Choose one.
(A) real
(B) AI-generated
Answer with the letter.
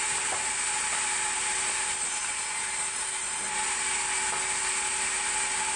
A